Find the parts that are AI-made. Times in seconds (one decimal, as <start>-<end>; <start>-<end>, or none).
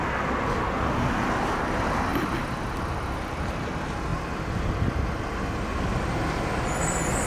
none